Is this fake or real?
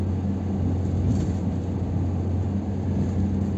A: real